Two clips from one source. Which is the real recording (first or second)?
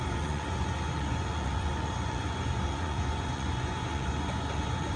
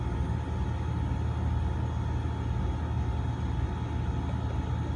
second